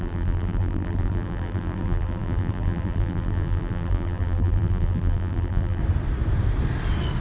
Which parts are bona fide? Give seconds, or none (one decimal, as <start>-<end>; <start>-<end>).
5.8-7.2